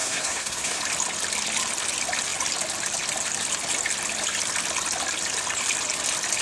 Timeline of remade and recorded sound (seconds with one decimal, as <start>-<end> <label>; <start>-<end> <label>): 0.0-0.8 remade; 0.8-6.4 recorded